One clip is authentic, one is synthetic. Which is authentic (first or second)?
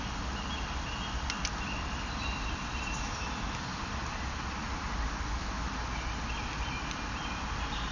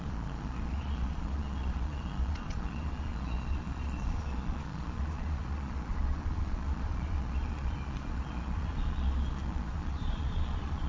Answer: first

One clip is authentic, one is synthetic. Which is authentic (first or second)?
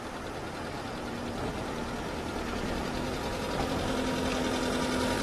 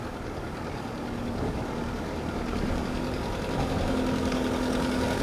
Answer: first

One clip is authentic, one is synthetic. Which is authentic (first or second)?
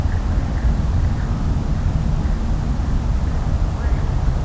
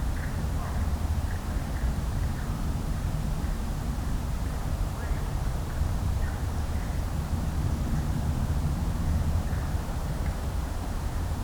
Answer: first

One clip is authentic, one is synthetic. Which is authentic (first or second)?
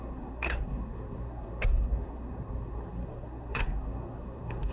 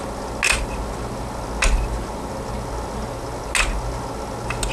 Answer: second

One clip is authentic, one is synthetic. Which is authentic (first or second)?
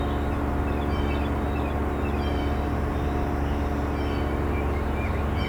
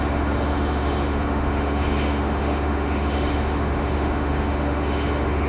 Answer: first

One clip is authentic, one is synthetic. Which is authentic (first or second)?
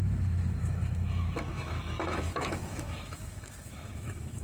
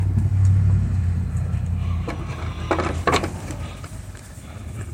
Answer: second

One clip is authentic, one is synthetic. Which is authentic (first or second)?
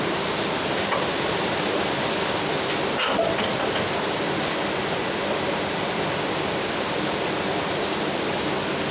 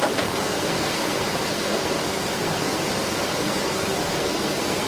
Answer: first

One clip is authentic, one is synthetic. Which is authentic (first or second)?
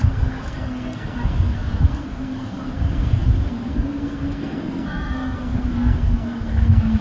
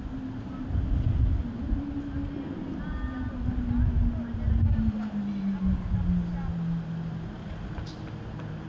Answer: second